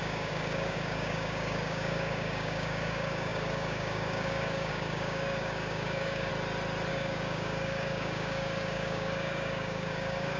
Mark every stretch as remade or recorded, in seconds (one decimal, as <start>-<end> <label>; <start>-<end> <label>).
0.0-6.3 remade; 6.3-6.9 recorded; 6.9-10.4 remade